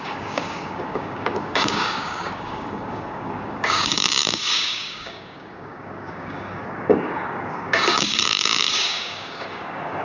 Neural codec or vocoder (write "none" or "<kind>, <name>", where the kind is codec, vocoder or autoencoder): codec, DAC